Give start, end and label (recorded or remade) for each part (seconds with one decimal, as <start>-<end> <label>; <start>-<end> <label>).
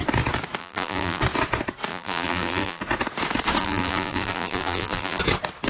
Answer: 0.0-0.6 recorded; 0.6-1.2 remade; 1.2-1.9 recorded; 1.9-2.8 remade; 2.8-3.6 recorded; 3.6-5.2 remade; 5.2-5.7 recorded